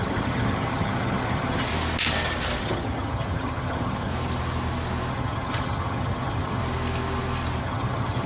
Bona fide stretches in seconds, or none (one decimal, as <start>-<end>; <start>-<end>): 1.7-2.6; 4.1-5.1; 6.6-7.6

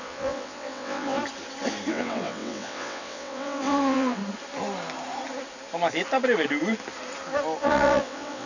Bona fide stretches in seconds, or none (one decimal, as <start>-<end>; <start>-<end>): 1.2-1.9; 4.2-7.6

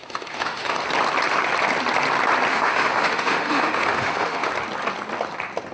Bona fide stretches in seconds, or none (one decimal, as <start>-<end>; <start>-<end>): 0.8-2.5; 4.5-5.7